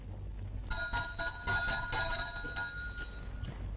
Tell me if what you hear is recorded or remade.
recorded